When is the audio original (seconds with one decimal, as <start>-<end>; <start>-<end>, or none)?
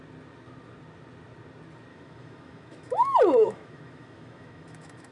0.0-1.9